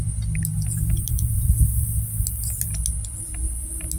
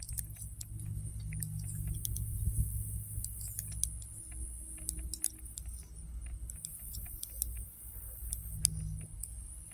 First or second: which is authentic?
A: second